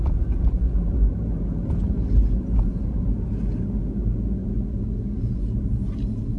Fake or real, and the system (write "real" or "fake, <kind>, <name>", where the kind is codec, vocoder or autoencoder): real